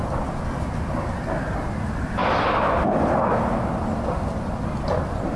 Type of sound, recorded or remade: recorded